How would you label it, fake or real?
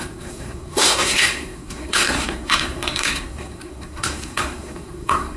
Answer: fake